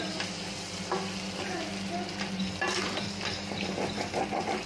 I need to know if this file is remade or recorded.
recorded